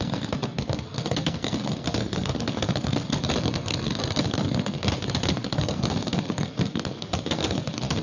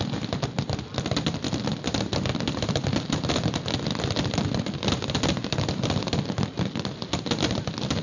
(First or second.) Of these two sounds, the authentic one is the second